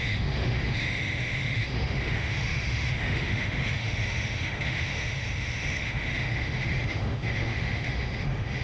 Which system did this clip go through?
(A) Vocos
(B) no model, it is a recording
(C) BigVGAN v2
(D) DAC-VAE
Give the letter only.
D